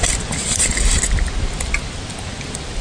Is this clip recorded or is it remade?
recorded